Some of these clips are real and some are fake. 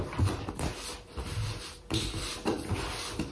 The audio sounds fake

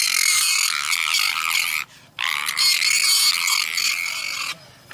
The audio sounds real